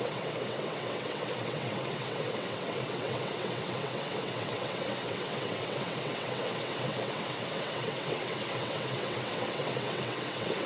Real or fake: fake